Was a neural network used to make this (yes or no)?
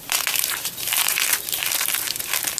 yes